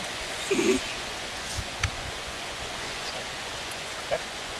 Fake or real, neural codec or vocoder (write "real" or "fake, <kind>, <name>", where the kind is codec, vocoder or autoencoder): fake, vocoder, Vocos